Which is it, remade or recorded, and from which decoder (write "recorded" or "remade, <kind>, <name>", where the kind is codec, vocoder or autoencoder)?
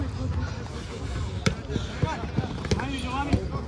recorded